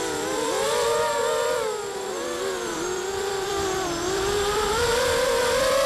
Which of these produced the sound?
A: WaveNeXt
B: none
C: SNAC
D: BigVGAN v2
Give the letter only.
D